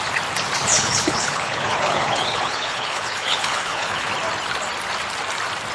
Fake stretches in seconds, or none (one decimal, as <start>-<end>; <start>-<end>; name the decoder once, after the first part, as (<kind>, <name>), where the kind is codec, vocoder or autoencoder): 0.7-4.1 (codec, HILCodec)